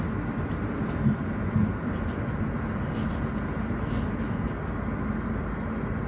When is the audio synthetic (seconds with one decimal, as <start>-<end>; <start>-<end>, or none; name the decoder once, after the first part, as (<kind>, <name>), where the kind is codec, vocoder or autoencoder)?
none